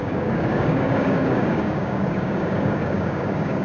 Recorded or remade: remade